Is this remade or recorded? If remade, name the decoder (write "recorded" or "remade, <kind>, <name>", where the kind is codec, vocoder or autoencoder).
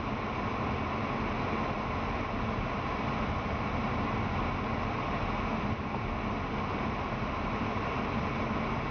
recorded